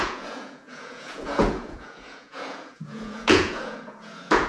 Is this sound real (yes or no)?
no